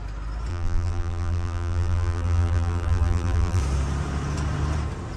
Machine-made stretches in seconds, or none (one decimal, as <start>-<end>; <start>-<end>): 0.5-3.6